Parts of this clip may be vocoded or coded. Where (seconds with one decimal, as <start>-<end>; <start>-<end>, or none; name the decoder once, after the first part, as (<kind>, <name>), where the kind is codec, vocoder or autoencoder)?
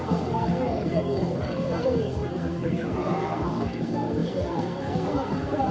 0.0-5.7 (codec, SNAC)